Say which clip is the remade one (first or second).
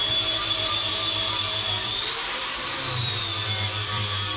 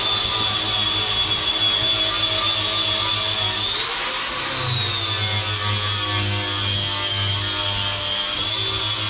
first